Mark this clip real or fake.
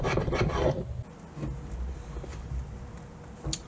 real